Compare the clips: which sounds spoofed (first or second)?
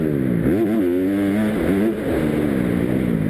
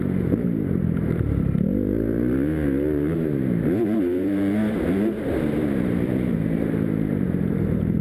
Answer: second